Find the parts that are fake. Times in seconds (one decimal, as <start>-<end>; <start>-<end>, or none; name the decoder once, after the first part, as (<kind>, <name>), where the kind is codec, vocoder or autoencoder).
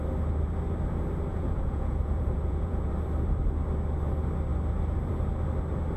1.3-2.9 (vocoder, Vocos)